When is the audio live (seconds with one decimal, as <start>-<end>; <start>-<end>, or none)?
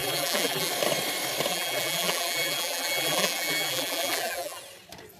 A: 0.7-1.5; 4.6-5.2